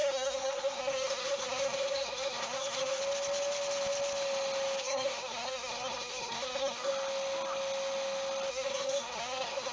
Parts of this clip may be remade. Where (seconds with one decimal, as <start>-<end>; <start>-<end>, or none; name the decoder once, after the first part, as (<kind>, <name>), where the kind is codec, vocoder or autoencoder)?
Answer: 0.0-3.0 (codec, SNAC); 4.8-6.9; 8.5-9.7